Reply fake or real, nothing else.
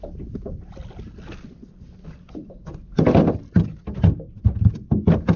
real